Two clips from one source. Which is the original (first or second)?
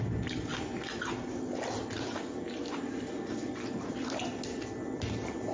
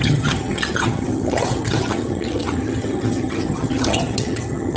first